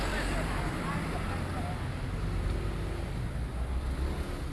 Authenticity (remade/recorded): recorded